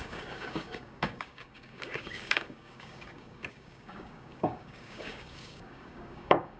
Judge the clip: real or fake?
fake